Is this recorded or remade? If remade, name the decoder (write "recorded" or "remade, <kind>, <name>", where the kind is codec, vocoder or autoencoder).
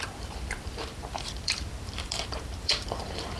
remade, vocoder, BigVGAN v2